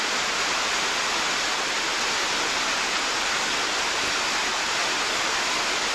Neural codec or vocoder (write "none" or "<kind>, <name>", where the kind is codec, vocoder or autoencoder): none